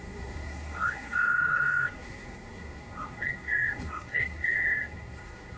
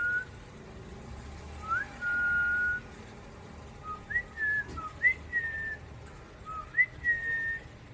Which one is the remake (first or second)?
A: first